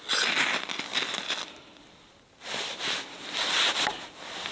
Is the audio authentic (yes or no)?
yes